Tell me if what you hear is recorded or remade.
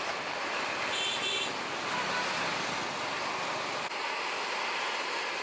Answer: recorded